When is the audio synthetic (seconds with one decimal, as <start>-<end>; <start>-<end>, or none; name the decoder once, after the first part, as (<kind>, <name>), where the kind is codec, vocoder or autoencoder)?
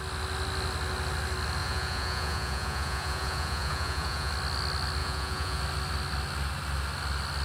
1.6-4.3 (vocoder, Vocos); 5.0-5.6